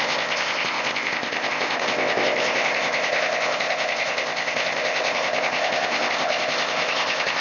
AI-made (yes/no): yes